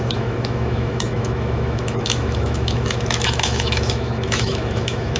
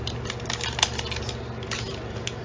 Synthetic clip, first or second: first